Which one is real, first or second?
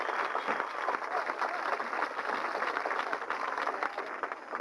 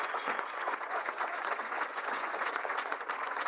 first